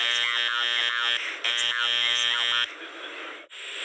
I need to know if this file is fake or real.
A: real